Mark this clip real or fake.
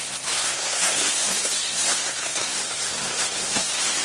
fake